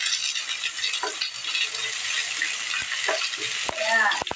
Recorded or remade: recorded